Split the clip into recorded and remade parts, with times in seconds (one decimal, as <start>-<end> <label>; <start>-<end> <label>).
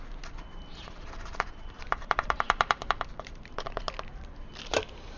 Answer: 0.0-0.7 recorded; 0.7-3.8 remade; 3.8-5.2 recorded